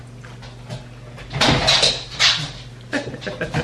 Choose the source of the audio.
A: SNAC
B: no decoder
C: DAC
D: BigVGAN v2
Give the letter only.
B